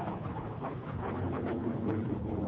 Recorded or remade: remade